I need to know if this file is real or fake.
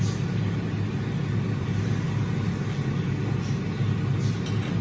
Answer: real